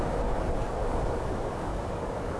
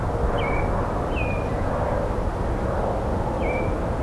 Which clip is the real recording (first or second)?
second